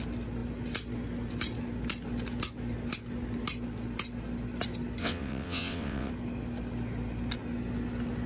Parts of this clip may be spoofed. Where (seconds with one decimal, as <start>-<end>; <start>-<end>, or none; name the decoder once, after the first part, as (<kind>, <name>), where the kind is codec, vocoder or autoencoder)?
5.0-6.1 (vocoder, WaveNeXt)